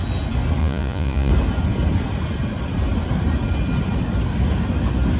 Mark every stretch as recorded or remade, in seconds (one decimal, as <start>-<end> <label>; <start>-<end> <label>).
0.0-0.6 recorded; 0.6-1.3 remade; 1.3-5.2 recorded